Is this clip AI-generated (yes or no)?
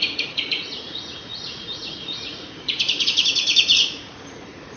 yes